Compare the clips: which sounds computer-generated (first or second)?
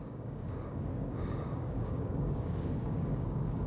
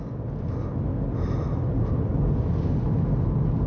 first